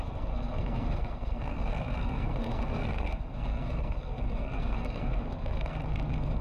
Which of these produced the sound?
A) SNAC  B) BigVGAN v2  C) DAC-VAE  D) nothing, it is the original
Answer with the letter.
A